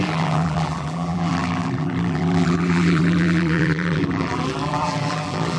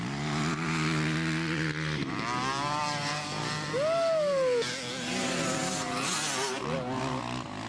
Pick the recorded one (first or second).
second